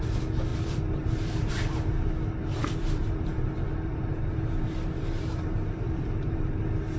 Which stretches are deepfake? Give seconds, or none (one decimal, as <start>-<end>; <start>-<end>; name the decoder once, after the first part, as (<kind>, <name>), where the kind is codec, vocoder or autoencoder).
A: 0.5-1.5 (vocoder, BigVGAN v2); 2.4-6.6